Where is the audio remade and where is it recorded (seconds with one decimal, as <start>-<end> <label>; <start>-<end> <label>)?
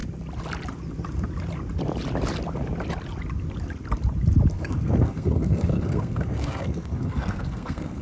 0.0-4.5 recorded; 4.5-8.0 remade